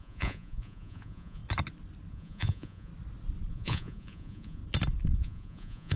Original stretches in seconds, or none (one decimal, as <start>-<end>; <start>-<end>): 1.4-2.1; 2.9-3.5; 4.6-5.2